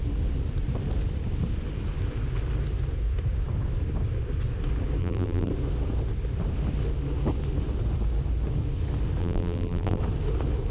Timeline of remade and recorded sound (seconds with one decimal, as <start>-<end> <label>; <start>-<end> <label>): 0.0-5.0 recorded; 5.0-5.5 remade; 5.5-9.2 recorded; 9.2-10.0 remade; 10.0-10.7 recorded

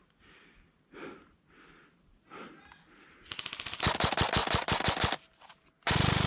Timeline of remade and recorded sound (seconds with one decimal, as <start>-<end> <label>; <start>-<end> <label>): 0.0-6.3 recorded

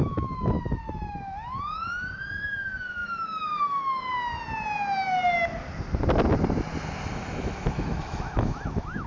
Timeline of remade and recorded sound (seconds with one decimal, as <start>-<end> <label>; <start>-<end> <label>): 0.0-4.1 remade; 4.1-7.4 recorded; 7.4-9.1 remade

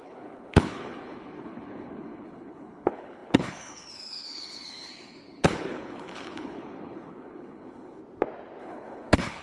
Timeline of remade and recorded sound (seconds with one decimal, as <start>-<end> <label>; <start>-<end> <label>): 0.0-8.0 remade; 8.0-8.6 recorded; 8.6-9.4 remade

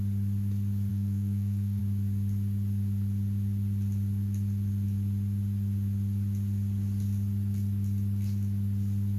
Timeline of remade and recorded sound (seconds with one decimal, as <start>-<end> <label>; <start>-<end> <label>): 0.0-0.9 recorded; 0.9-1.8 remade; 1.8-9.2 recorded

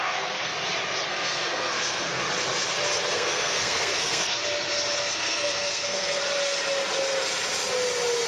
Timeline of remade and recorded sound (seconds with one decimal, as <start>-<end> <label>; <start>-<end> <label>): 0.0-0.5 remade; 0.5-1.1 recorded; 1.1-2.2 remade; 2.2-3.1 recorded; 3.1-4.4 remade; 4.4-5.0 recorded; 5.0-6.2 remade; 6.2-8.3 recorded